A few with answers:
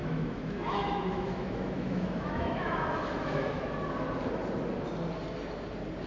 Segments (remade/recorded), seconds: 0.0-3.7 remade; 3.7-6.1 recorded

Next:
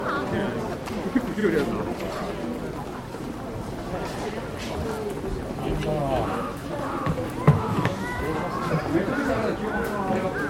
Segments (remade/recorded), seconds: 0.0-6.0 recorded; 6.0-6.7 remade; 6.7-7.5 recorded; 7.5-8.2 remade; 8.2-10.5 recorded

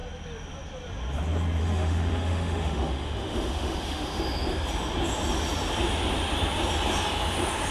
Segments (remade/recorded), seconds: 0.0-1.6 recorded; 1.6-4.2 remade; 4.2-7.7 recorded

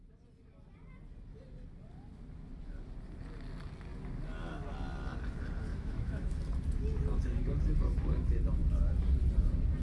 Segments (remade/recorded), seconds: 0.0-5.7 recorded; 5.7-6.4 remade; 6.4-9.8 recorded

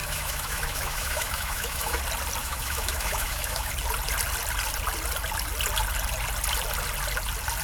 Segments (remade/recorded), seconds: 0.0-2.0 remade; 2.0-2.4 recorded; 2.4-3.7 remade; 3.7-7.6 recorded

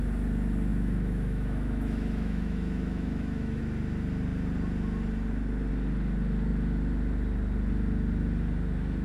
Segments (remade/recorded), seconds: 0.0-0.7 recorded; 0.7-3.6 remade; 3.6-9.0 recorded

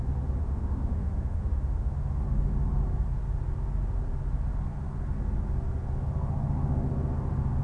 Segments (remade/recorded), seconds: 0.0-0.4 recorded; 0.4-1.9 remade; 1.9-7.6 recorded

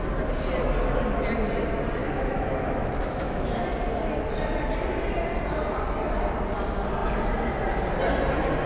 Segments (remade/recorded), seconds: 0.0-2.0 recorded; 2.0-3.6 remade; 3.6-8.7 recorded